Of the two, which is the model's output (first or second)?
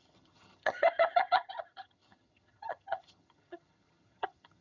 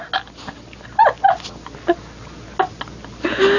first